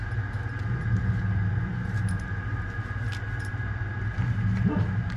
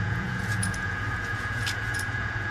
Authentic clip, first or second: first